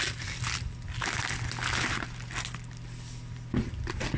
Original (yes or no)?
yes